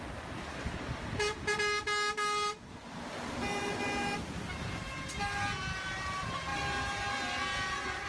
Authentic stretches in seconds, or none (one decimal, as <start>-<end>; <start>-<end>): 0.0-8.1